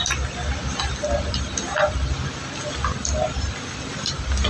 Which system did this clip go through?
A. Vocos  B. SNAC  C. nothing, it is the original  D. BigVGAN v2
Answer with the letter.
C